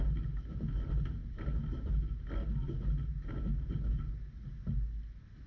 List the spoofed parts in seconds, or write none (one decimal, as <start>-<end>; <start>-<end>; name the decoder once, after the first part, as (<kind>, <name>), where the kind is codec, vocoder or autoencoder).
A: none